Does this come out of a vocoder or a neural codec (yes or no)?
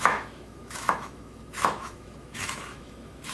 yes